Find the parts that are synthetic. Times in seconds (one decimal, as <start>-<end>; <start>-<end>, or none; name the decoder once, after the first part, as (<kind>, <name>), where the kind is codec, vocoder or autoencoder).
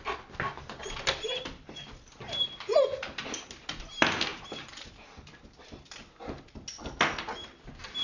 4.3-5.7 (vocoder, BigVGAN v2)